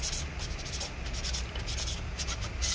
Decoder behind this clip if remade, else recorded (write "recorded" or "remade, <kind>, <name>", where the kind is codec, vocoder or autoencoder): recorded